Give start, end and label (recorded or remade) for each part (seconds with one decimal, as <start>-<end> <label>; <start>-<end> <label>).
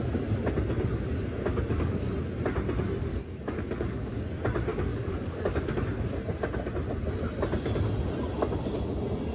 0.0-1.5 recorded; 1.5-2.1 remade; 2.1-3.1 recorded; 3.1-4.2 remade; 4.2-4.7 recorded; 4.7-5.7 remade; 5.7-9.3 recorded